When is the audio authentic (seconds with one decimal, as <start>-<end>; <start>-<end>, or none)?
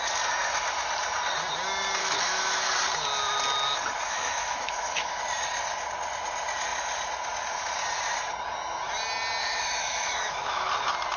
0.0-2.0; 2.7-4.0; 5.2-9.4; 10.7-11.2